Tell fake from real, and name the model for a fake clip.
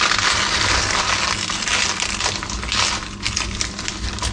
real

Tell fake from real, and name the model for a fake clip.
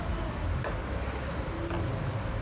real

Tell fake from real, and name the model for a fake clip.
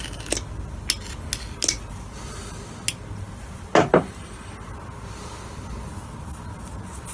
real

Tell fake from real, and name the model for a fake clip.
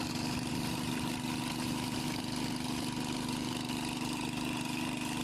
real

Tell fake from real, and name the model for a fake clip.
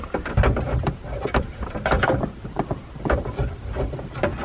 real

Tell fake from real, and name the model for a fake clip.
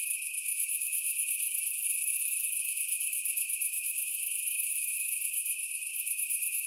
fake, autoencoder, DAC-VAE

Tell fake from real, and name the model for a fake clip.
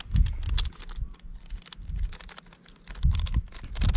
real